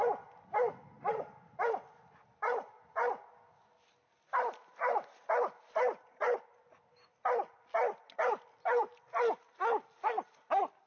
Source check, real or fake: real